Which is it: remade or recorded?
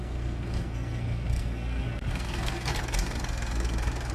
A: remade